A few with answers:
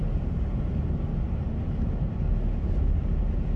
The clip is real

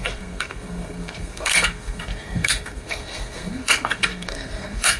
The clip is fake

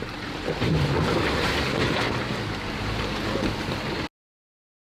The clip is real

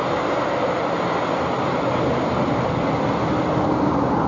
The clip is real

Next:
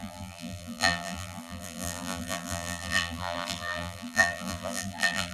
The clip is fake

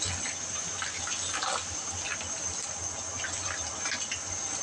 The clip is real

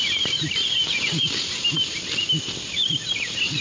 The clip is real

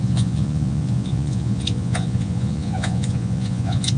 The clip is fake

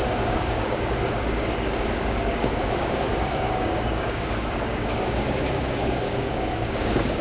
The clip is fake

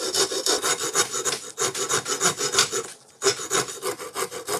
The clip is real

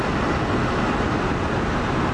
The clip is real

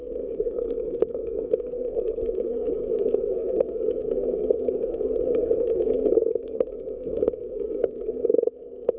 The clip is fake